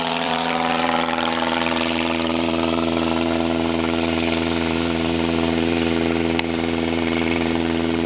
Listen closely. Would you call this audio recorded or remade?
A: remade